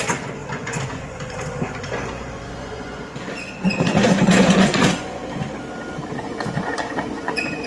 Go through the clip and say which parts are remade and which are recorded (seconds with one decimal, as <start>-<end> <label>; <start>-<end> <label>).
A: 0.0-5.2 remade; 5.2-6.1 recorded; 6.1-7.7 remade